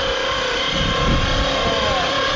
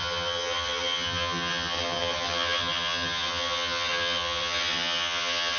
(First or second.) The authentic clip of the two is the first